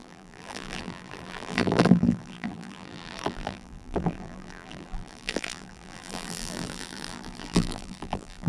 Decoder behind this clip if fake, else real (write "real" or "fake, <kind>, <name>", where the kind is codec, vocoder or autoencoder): fake, vocoder, BigVGAN v2